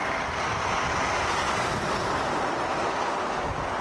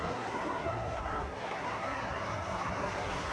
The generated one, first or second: second